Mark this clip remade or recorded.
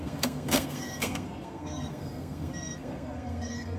remade